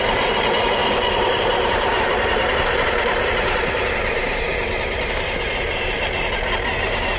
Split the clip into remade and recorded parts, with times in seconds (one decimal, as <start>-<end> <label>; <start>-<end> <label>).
0.0-0.8 recorded; 0.8-5.1 remade; 5.1-7.2 recorded